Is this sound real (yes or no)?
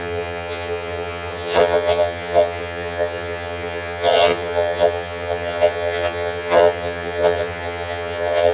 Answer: no